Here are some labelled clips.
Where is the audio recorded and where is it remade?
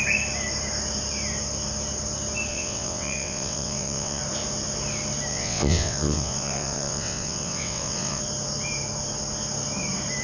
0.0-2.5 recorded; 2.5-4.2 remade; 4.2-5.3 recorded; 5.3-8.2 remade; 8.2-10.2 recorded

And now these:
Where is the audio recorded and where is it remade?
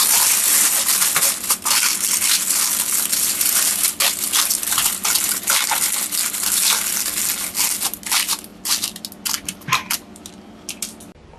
0.0-11.4 recorded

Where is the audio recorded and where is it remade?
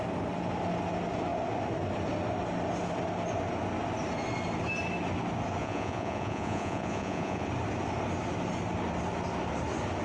0.0-5.6 recorded; 5.6-7.5 remade; 7.5-10.0 recorded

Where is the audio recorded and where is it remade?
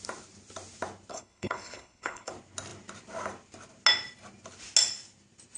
0.0-1.1 recorded; 1.1-2.3 remade; 2.3-5.6 recorded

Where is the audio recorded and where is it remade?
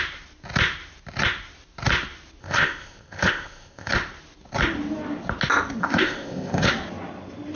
0.0-2.4 recorded; 2.4-3.9 remade; 3.9-5.8 recorded; 5.8-6.7 remade; 6.7-7.5 recorded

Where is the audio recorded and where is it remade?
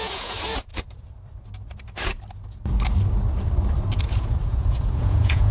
0.0-0.7 remade; 0.7-4.0 recorded; 4.0-5.5 remade